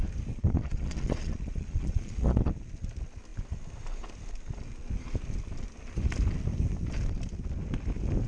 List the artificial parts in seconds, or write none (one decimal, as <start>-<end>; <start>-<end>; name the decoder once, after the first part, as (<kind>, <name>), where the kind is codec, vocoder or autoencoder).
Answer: 0.4-2.5 (vocoder, Vocos)

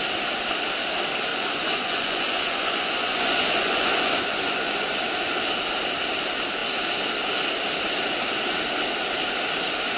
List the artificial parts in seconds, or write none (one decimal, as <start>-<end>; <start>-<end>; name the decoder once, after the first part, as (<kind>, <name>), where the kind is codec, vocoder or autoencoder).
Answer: 1.3-5.0 (vocoder, Vocos)

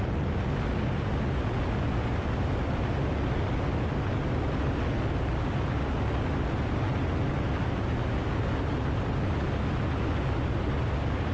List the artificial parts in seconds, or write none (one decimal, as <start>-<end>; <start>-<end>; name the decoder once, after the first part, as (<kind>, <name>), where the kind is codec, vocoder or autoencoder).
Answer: none